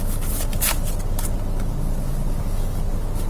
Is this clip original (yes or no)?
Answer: yes